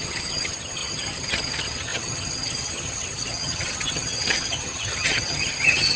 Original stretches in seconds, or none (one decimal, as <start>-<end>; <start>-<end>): none